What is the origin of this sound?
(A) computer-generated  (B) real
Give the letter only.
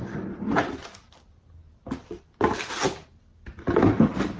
B